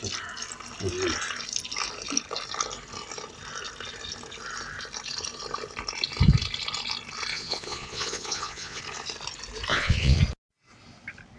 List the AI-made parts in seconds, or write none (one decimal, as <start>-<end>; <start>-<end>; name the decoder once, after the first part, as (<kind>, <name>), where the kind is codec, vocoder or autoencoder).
7.3-8.8 (vocoder, Vocos); 9.7-10.2